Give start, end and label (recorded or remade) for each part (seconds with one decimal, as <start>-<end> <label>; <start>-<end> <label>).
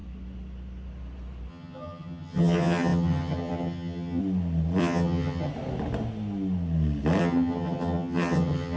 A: 0.0-1.5 recorded; 1.5-4.2 remade; 4.2-4.8 recorded; 4.8-5.5 remade; 5.5-7.2 recorded; 7.2-8.8 remade